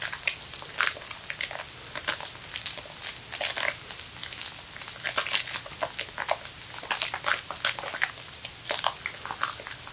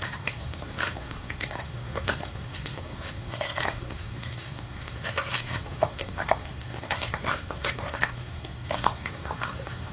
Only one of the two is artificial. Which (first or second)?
second